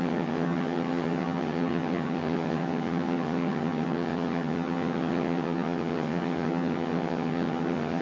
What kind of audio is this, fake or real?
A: fake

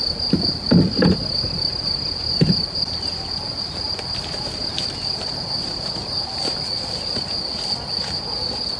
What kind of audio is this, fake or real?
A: real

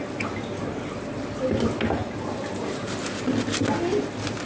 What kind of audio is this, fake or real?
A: real